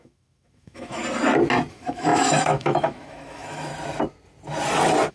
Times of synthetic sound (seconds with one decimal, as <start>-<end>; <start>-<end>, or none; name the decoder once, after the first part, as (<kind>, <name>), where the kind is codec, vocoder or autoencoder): 0.0-1.0 (autoencoder, DAC-VAE); 1.7-3.7